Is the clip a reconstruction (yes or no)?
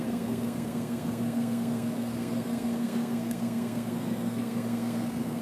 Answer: yes